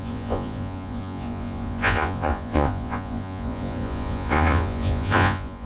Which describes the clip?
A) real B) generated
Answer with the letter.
B